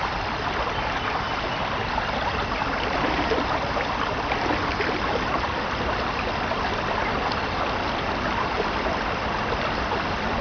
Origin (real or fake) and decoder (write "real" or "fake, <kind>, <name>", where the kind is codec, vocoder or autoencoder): real